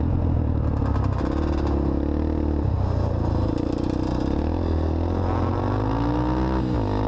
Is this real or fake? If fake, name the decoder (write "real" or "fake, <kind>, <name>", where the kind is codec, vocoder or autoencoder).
real